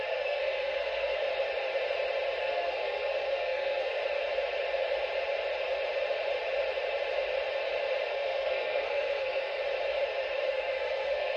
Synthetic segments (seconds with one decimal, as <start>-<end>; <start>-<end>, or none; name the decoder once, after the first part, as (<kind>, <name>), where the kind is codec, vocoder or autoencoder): 0.0-1.2 (codec, SNAC); 2.4-4.0; 8.1-9.6; 10.5-11.4